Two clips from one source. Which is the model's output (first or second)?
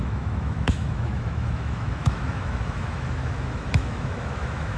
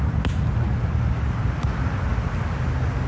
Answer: first